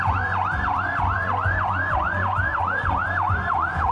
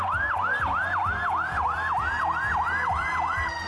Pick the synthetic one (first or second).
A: first